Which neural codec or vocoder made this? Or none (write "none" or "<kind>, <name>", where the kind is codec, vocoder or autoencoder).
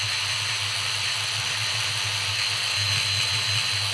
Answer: none